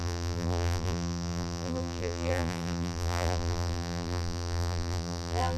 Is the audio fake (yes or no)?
yes